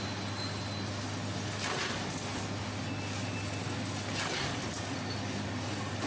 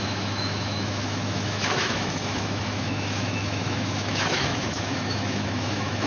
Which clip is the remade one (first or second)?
second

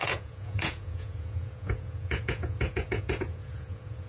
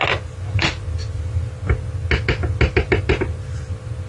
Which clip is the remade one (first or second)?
first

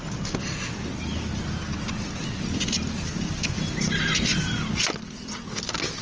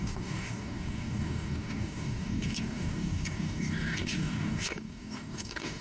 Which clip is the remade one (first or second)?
second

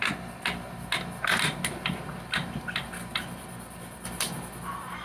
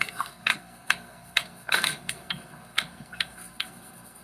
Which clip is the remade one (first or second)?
second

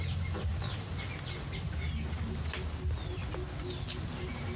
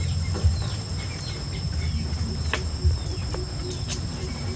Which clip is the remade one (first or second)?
second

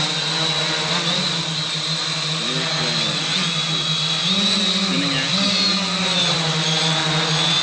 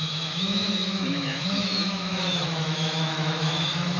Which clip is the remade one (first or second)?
second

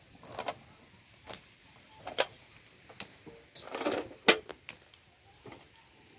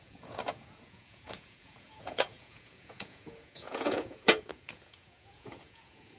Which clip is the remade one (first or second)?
second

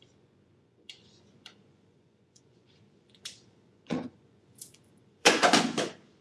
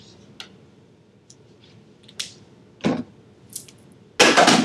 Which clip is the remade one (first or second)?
first